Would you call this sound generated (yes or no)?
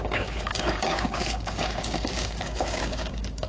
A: yes